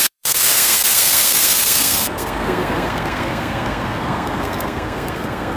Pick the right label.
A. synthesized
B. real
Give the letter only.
A